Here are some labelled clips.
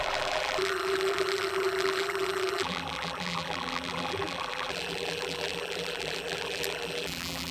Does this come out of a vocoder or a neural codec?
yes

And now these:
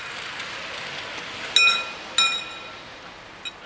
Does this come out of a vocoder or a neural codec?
no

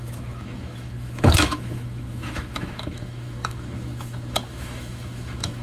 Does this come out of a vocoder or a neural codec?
yes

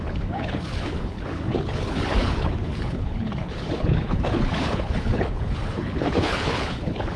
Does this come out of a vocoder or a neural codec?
yes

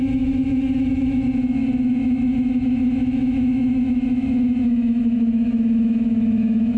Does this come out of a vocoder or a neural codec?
yes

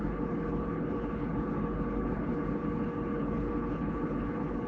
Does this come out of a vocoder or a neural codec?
yes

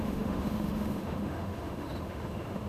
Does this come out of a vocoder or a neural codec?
yes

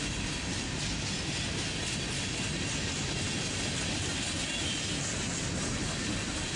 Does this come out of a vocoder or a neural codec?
no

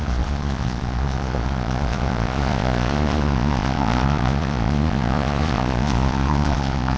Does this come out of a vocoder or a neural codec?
yes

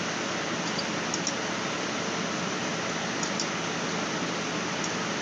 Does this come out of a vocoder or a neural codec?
no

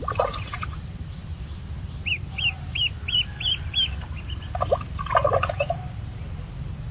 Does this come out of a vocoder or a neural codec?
no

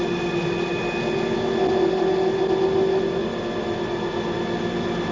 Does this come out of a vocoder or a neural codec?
no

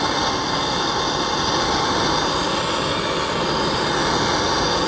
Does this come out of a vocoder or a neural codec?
no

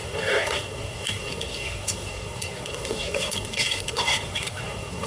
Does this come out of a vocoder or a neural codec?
yes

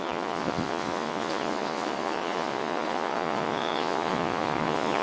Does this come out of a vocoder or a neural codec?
yes